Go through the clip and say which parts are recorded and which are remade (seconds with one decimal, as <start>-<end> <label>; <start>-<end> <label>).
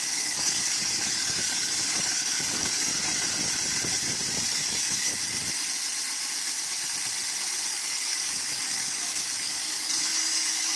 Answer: 0.0-2.9 remade; 2.9-4.5 recorded; 4.5-5.1 remade; 5.1-7.7 recorded; 7.7-10.8 remade